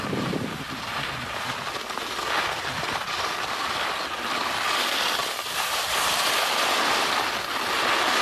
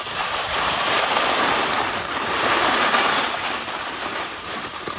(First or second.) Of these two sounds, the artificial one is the second